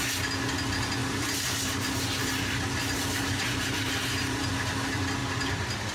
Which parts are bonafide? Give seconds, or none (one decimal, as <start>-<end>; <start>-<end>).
0.0-1.0; 4.5-5.9